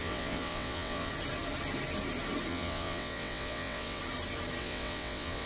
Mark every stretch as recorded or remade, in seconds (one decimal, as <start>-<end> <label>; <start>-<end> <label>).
0.0-1.1 remade; 1.1-2.5 recorded; 2.5-4.0 remade; 4.0-4.6 recorded; 4.6-5.5 remade